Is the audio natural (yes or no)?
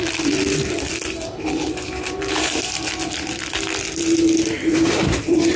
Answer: no